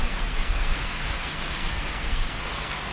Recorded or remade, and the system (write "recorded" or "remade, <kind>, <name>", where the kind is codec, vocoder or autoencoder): remade, codec, SNAC